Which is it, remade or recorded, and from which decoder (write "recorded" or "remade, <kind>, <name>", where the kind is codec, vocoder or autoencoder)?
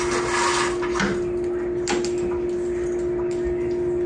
recorded